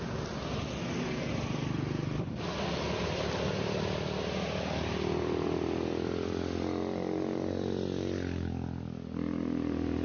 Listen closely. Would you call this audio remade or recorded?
recorded